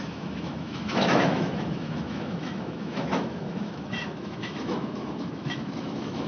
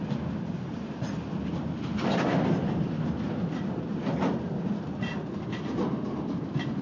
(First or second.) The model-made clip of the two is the first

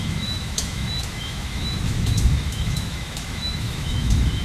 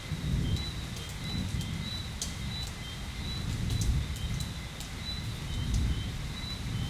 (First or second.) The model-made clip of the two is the first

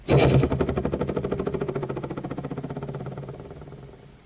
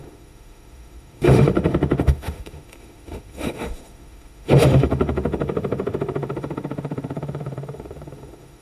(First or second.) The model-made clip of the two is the second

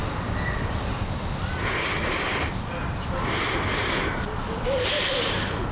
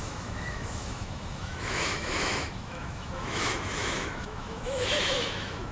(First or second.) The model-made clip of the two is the second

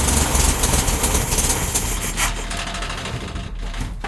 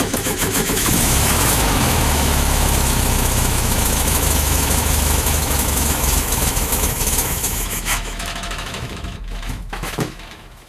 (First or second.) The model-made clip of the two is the second